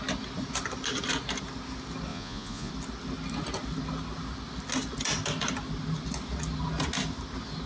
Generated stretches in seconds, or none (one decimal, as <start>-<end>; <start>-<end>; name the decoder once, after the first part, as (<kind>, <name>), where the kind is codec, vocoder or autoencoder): 2.1-2.7 (vocoder, Vocos)